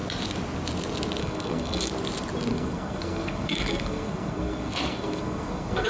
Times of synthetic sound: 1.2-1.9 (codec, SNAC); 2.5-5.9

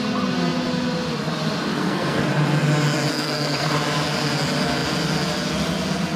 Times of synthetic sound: 1.7-2.3 (codec, SNAC); 3.1-3.7